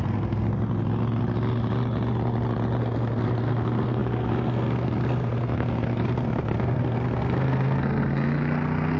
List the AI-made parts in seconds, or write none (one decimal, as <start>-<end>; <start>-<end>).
0.0-0.5; 2.8-9.0